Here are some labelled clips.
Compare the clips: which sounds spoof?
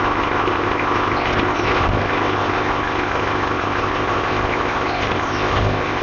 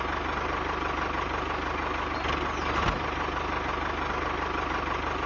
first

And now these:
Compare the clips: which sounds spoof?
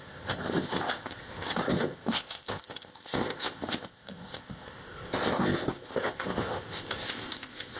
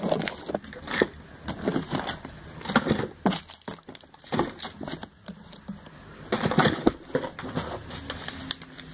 first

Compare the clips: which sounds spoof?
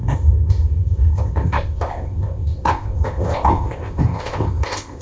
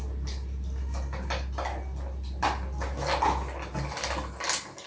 first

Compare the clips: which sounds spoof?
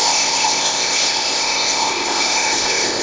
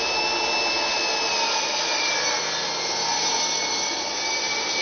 first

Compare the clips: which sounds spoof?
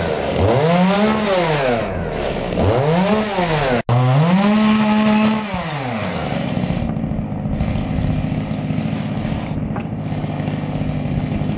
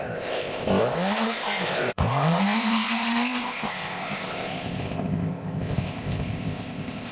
second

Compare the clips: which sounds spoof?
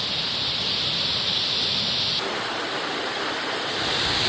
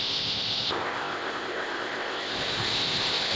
second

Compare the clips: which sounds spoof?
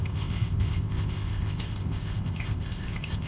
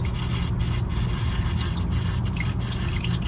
first